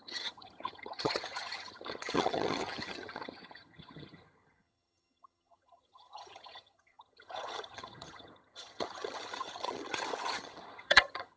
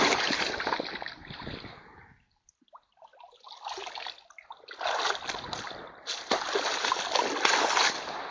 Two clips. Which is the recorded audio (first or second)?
second